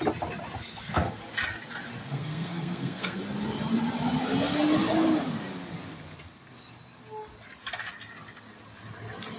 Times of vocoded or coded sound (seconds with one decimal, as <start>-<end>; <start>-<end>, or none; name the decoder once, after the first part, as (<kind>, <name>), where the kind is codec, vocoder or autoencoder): 0.7-1.2 (codec, SNAC); 2.0-3.2